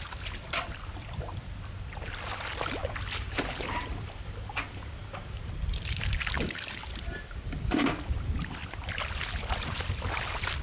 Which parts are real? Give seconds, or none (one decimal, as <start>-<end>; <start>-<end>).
0.0-10.6